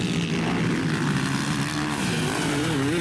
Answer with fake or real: real